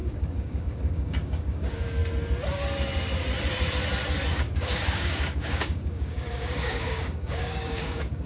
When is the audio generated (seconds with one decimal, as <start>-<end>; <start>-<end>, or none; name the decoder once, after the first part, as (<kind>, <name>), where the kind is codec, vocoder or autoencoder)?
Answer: 0.0-2.0 (codec, DAC); 4.3-8.3